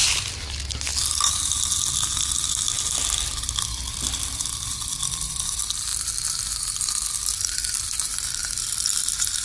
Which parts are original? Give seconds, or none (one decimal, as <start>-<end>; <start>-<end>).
0.0-4.5